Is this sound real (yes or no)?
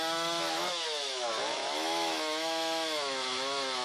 no